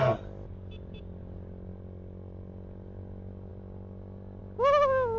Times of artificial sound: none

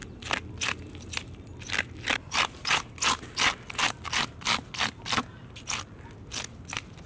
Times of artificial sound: none